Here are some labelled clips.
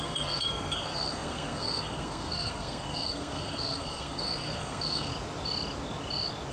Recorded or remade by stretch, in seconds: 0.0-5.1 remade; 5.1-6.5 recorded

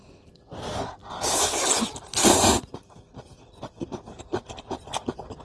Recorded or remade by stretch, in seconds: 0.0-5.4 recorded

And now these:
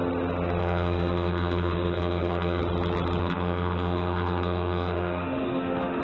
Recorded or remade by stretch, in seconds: 0.0-0.6 recorded; 0.6-2.6 remade; 2.6-3.2 recorded; 3.2-6.0 remade

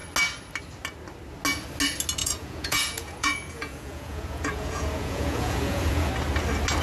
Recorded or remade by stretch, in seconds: 0.0-2.2 recorded; 2.2-6.1 remade; 6.1-6.8 recorded

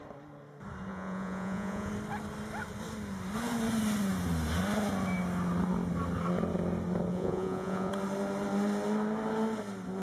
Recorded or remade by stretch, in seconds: 0.0-0.9 recorded; 0.9-1.9 remade; 1.9-7.1 recorded; 7.1-7.9 remade; 7.9-10.0 recorded